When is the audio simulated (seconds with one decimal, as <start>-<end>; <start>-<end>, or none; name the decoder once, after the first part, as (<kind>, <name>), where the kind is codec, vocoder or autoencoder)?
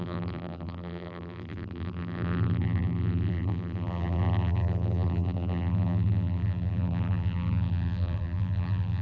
0.0-9.0 (vocoder, BigVGAN v2)